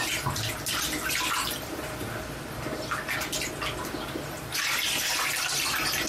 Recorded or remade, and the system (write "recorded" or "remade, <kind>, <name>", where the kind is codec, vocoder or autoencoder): remade, vocoder, BigVGAN v2